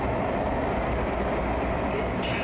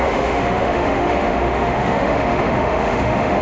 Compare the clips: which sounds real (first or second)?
first